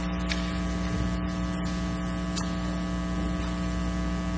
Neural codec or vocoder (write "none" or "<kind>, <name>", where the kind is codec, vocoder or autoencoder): none